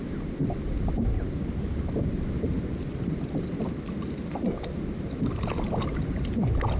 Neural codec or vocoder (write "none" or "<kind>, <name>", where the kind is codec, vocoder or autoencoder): none